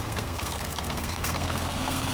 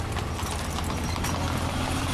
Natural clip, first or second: second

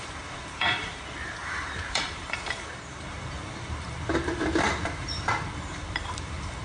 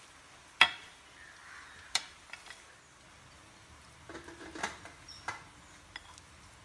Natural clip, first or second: second